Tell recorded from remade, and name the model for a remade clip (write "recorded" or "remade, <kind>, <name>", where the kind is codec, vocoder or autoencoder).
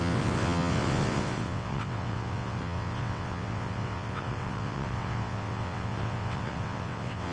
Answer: remade, vocoder, WaveNeXt